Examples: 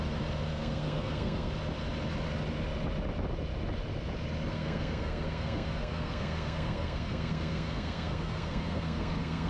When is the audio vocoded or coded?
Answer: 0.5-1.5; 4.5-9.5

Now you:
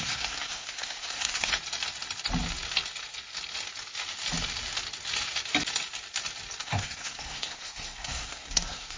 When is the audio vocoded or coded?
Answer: 0.0-1.5; 6.6-9.0

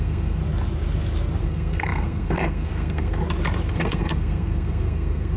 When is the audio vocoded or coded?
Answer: 0.0-0.4; 1.4-3.2; 3.7-5.4

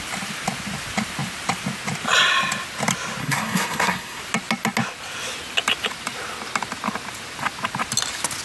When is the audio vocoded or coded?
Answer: 3.2-4.2

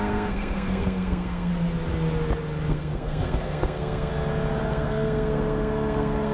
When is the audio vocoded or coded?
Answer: 0.0-1.5; 2.7-4.1; 4.6-6.3

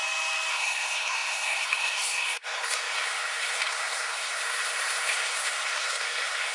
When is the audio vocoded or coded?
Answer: 0.5-6.5

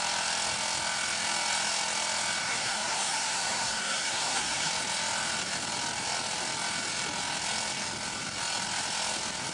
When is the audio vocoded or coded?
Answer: 2.4-4.7